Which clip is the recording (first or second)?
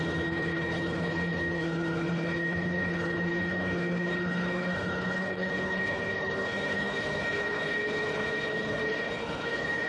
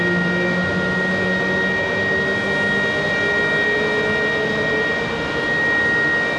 second